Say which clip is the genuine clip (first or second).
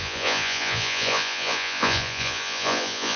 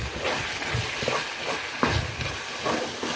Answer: second